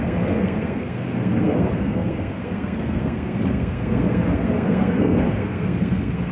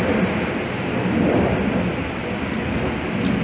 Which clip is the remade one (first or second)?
first